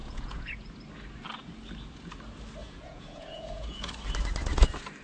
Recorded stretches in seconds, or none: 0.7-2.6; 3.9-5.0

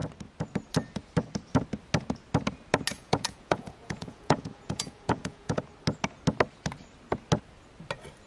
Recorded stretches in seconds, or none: 0.0-2.9; 5.6-8.3

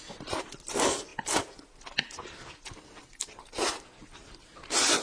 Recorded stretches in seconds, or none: 0.0-5.0

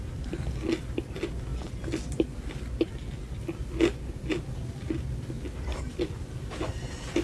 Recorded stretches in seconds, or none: 0.0-7.2

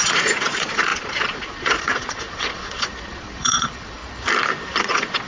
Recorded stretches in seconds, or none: 4.0-4.8

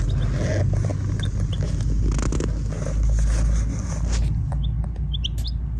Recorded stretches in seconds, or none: 0.0-5.8

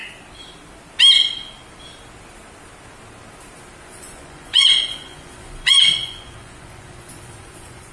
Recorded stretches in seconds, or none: 0.0-3.8

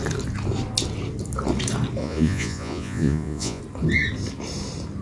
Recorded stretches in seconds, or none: 0.0-2.0; 3.6-5.0